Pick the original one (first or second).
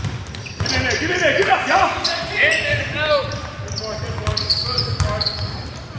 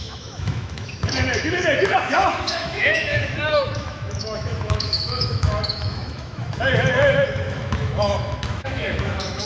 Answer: first